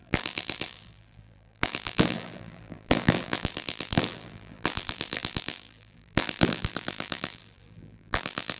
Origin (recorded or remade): remade